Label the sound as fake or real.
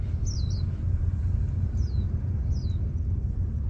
real